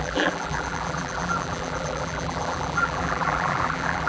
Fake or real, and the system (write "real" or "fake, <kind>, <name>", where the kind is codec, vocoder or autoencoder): fake, vocoder, BigVGAN v2